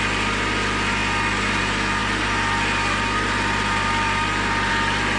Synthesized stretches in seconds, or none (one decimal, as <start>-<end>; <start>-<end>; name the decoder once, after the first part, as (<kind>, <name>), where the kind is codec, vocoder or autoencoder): none